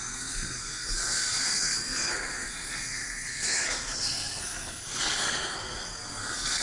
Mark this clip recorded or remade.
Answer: remade